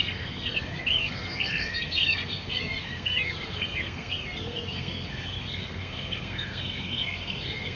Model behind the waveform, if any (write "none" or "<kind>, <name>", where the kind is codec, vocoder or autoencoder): codec, SNAC